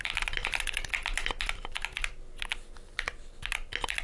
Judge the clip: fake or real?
real